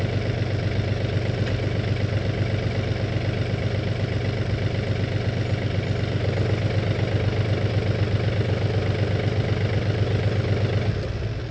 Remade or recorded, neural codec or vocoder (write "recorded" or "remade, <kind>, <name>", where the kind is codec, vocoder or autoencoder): recorded